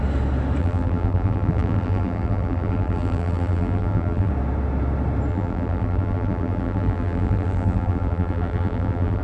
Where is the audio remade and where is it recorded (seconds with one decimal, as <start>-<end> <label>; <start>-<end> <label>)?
0.0-0.6 recorded; 0.6-4.3 remade; 4.3-5.3 recorded; 5.3-9.2 remade